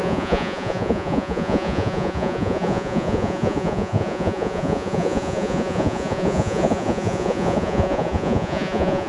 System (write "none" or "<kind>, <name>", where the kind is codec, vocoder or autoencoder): vocoder, Vocos